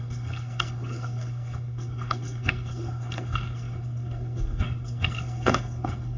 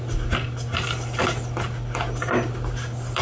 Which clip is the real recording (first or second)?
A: second